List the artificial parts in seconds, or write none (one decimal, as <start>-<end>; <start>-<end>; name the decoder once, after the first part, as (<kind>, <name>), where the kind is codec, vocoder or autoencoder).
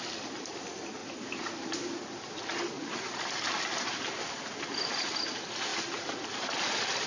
none